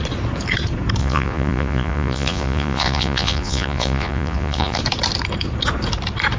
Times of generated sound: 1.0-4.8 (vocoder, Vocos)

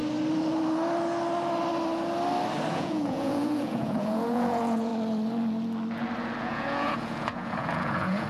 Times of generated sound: 2.7-4.9 (vocoder, Vocos); 6.4-8.3

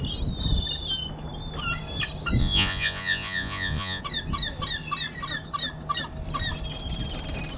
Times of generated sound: 2.4-4.0 (vocoder, Vocos)